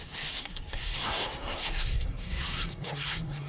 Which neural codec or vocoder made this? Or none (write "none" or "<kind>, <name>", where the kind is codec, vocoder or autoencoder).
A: codec, SNAC